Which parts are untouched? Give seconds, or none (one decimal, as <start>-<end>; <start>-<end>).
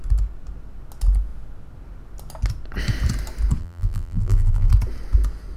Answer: 0.0-3.6; 4.7-5.6